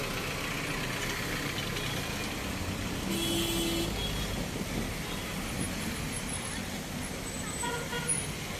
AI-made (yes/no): no